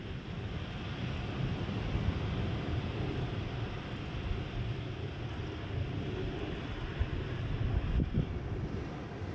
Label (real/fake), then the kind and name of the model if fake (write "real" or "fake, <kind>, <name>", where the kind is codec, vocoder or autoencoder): real